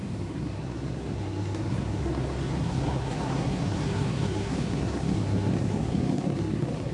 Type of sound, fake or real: fake